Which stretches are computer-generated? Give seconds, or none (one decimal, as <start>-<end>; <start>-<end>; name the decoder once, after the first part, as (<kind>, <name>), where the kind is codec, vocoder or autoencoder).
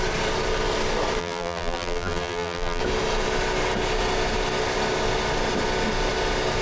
1.2-2.8 (vocoder, BigVGAN v2)